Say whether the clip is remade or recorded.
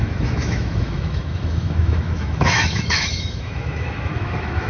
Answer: remade